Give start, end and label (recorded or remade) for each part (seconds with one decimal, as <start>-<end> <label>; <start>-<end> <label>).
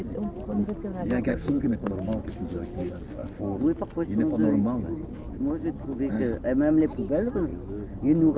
0.0-1.3 recorded; 1.3-1.9 remade; 1.9-8.4 recorded